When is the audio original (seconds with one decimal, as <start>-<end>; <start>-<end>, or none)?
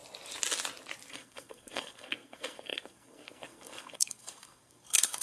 0.0-1.1